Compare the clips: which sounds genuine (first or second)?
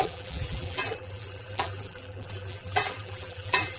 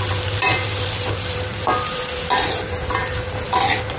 second